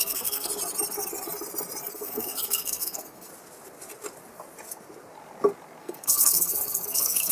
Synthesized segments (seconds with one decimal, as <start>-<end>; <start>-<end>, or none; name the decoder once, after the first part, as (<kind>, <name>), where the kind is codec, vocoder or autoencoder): 0.0-0.5 (codec, SNAC); 1.9-3.3; 5.8-7.3

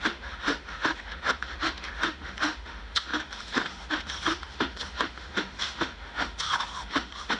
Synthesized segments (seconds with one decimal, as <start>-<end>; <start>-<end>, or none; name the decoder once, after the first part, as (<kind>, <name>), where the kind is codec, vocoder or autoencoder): 0.0-7.4 (autoencoder, DAC-VAE)

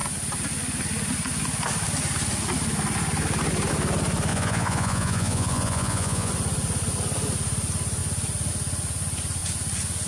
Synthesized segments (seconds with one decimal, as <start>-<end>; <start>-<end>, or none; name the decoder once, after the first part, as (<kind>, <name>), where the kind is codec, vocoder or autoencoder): 4.3-6.3 (vocoder, Vocos)

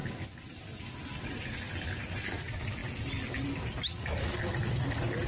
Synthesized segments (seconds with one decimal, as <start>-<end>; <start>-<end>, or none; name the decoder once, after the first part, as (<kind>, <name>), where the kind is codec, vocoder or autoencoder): none

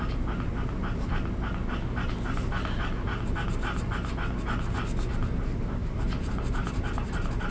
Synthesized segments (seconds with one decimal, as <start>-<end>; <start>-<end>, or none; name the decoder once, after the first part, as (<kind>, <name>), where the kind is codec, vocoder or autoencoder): 5.8-6.3 (vocoder, BigVGAN v2)

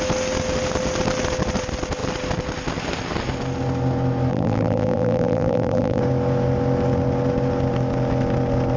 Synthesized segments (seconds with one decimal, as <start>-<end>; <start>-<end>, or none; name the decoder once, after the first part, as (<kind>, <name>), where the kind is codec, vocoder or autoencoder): 4.3-6.0 (vocoder, BigVGAN v2)

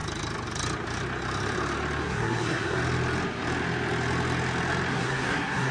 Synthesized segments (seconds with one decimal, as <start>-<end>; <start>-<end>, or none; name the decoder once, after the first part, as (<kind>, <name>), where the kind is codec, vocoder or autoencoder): 2.0-2.8 (codec, SNAC); 4.9-5.7